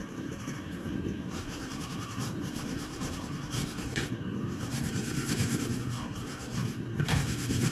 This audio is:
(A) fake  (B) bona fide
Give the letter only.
A